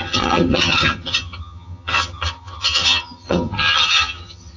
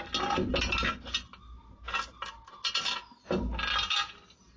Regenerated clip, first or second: first